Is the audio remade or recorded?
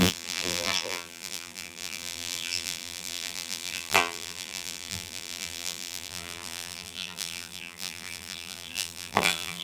remade